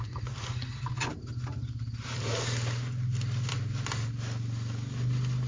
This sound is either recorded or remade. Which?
recorded